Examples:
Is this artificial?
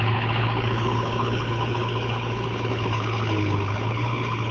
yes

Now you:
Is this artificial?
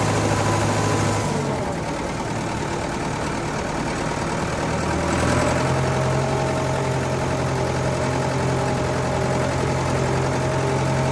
no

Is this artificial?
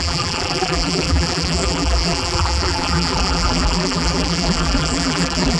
yes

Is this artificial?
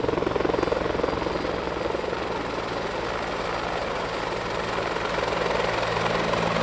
no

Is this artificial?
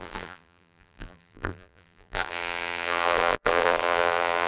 yes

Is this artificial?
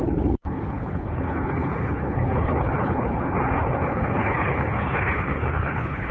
yes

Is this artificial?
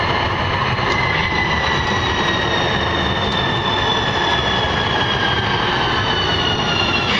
no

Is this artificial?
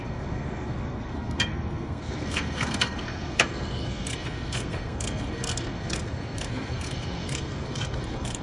yes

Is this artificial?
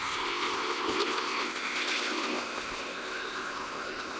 yes